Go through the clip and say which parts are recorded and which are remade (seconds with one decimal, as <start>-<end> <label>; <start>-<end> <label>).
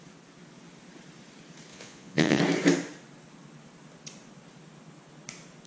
0.0-1.7 recorded; 1.7-2.4 remade; 2.4-5.7 recorded